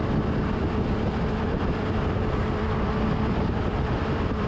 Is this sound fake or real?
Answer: fake